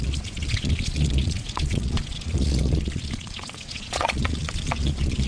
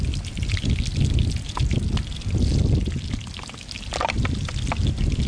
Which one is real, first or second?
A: second